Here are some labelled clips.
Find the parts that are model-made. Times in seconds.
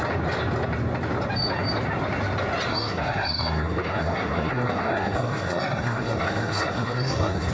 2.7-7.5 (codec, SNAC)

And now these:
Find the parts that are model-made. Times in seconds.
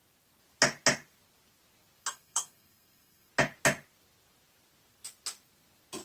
2.0-3.3 (codec, SNAC)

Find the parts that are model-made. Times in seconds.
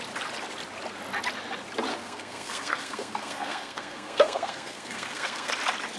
1.9-5.5 (codec, SNAC)